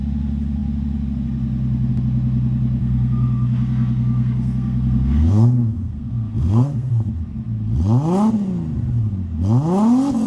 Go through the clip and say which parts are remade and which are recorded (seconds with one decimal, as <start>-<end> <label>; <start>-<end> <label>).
0.0-2.8 recorded; 2.8-6.9 remade; 6.9-10.3 recorded